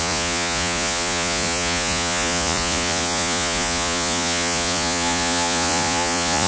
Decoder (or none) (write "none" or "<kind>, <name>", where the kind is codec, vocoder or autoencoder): vocoder, Vocos